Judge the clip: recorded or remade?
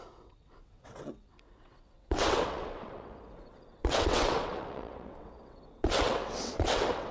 remade